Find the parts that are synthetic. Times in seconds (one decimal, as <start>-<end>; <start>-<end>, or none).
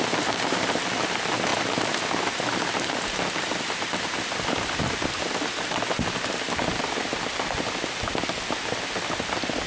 1.5-5.2